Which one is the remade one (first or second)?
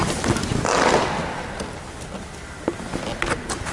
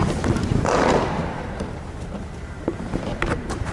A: second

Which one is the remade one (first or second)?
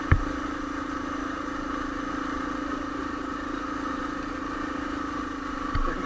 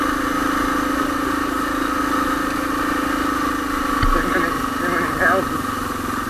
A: first